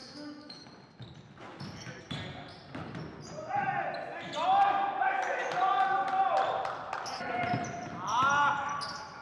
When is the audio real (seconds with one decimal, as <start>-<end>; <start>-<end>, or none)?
0.6-9.2